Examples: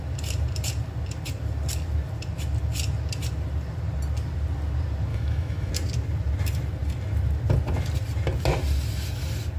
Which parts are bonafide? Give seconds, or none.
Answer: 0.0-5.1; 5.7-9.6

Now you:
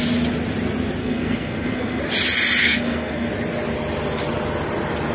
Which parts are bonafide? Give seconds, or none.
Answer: 0.0-1.0; 2.0-2.6; 3.3-5.1

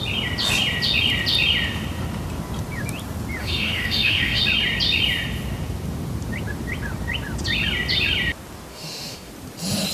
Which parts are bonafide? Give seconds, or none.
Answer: 0.0-3.4; 4.4-8.7; 9.3-9.9

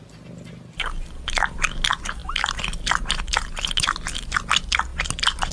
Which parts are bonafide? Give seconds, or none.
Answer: 0.0-5.5

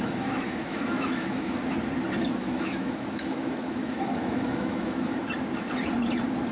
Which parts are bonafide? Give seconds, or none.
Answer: 1.6-2.4; 5.2-6.5

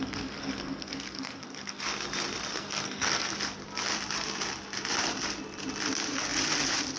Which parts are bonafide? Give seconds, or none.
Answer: 1.8-2.5; 3.3-7.0